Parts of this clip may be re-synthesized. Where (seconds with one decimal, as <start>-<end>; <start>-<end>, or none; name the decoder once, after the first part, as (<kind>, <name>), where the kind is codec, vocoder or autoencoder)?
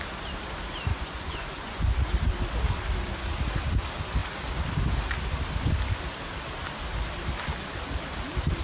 0.9-2.1 (vocoder, Vocos)